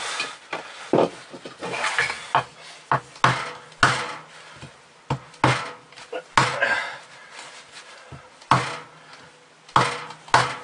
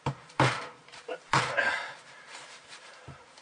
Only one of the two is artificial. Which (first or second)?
second